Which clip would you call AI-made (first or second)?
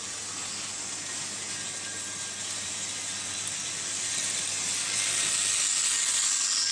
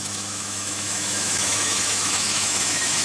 second